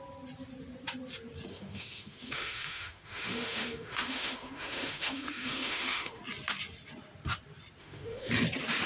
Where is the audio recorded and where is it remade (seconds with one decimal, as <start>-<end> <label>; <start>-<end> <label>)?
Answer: 0.0-1.5 recorded; 1.5-6.2 remade; 6.2-7.8 recorded; 7.8-8.3 remade; 8.3-8.9 recorded